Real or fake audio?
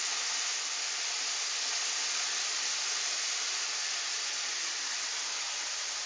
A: real